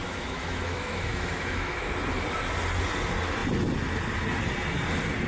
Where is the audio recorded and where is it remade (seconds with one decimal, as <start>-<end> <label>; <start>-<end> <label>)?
0.0-1.9 remade; 1.9-5.3 recorded